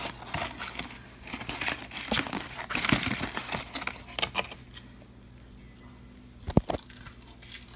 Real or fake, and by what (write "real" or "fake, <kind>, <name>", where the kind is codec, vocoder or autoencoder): real